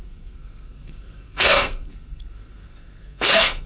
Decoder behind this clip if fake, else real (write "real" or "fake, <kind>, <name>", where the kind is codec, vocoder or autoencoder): fake, codec, SNAC